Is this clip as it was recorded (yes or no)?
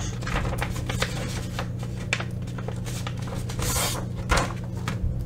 yes